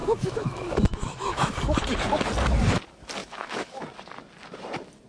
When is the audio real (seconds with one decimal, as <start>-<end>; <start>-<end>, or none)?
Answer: 1.5-3.2; 3.8-5.1